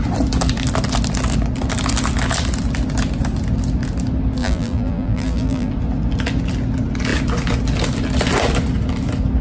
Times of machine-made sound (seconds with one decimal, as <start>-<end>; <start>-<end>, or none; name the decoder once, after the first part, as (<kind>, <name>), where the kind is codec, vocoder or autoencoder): 4.4-5.7 (vocoder, BigVGAN v2)